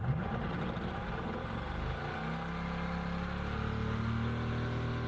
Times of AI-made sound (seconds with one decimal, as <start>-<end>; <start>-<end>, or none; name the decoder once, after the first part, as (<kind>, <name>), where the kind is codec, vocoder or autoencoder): none